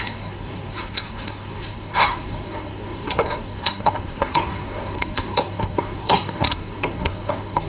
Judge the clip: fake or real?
fake